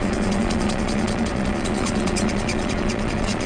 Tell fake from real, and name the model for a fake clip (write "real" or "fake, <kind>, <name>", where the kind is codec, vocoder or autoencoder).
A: fake, vocoder, Vocos